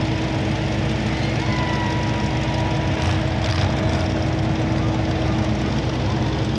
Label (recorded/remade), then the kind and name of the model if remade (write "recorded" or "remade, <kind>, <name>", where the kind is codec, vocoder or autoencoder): recorded